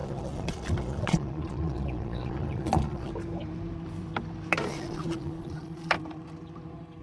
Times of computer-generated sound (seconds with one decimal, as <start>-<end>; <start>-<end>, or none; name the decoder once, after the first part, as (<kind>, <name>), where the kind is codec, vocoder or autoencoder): 0.0-3.1 (vocoder, Vocos); 4.7-5.9

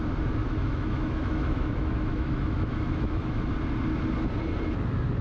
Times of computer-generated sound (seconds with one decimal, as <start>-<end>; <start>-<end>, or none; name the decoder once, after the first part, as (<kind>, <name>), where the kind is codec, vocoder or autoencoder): 0.4-3.5 (autoencoder, DAC-VAE)

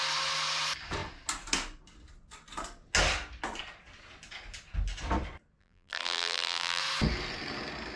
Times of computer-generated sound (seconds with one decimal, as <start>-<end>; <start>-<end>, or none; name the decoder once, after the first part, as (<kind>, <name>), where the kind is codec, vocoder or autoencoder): 5.6-6.8 (vocoder, BigVGAN v2)

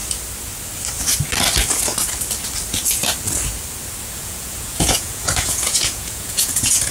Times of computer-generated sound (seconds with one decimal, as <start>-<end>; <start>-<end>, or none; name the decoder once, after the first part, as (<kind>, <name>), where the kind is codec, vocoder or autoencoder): 4.1-6.9 (vocoder, Vocos)

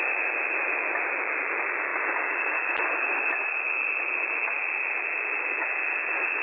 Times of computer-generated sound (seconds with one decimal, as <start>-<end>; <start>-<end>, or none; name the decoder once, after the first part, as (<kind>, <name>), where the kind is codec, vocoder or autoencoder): none

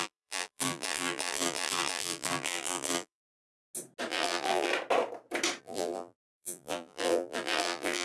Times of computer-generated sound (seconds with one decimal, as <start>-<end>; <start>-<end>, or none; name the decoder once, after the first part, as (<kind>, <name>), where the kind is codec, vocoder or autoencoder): 0.0-3.5 (vocoder, BigVGAN v2); 4.1-4.7; 5.6-8.0

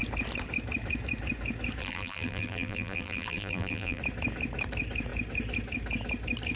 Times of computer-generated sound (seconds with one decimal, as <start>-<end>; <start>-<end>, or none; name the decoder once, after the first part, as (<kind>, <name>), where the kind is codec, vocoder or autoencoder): 1.8-4.0 (vocoder, BigVGAN v2)